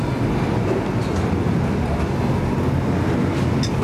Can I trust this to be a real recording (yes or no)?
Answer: yes